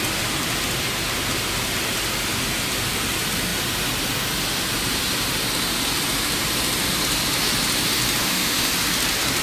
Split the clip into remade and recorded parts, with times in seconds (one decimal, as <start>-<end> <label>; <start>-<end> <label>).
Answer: 0.0-8.2 recorded; 8.2-8.7 remade; 8.7-9.4 recorded